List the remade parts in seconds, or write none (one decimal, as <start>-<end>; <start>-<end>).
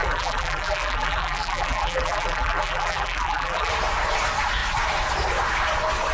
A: 0.0-3.7